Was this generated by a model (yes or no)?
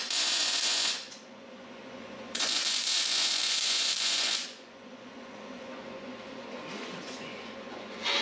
yes